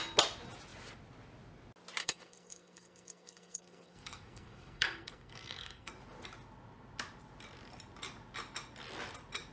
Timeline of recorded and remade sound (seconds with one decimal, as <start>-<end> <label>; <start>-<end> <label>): 0.0-2.0 recorded; 2.0-5.9 remade; 5.9-9.5 recorded